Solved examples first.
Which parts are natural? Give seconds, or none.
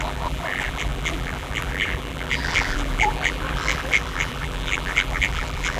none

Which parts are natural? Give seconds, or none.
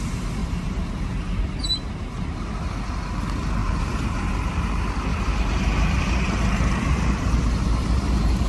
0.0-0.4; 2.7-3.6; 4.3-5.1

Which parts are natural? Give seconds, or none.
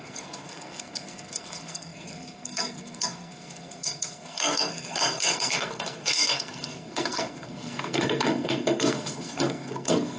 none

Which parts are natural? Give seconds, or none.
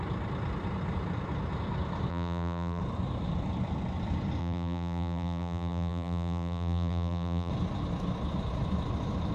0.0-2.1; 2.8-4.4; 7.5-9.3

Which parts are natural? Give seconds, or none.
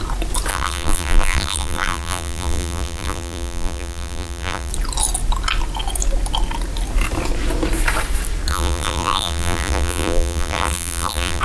0.0-0.5; 4.7-8.5